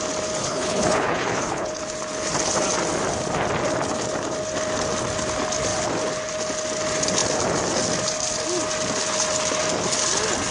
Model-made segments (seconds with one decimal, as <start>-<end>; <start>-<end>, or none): 0.4-1.8